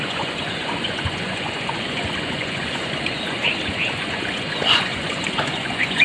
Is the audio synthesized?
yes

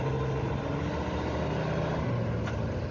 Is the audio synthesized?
no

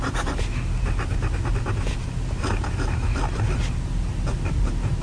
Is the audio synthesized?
no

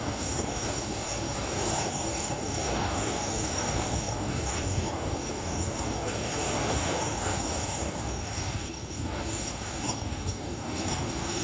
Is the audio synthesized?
yes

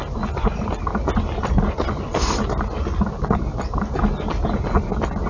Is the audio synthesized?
no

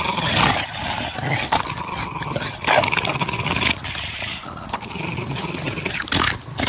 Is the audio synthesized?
no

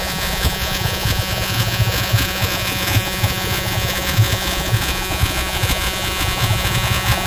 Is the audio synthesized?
yes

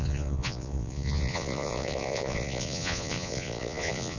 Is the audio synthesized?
yes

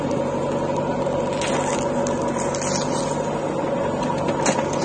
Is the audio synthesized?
no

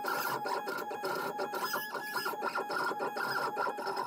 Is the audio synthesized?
yes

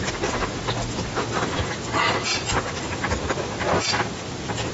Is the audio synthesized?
no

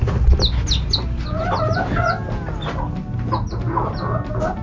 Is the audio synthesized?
no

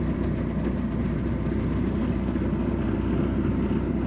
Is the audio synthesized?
no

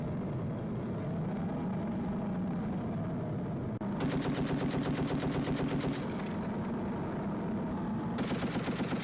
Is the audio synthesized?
no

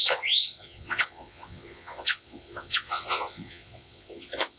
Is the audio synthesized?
yes